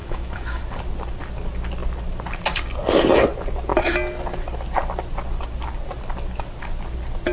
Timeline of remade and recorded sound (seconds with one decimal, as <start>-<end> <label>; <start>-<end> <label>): 0.0-0.6 remade; 0.6-7.3 recorded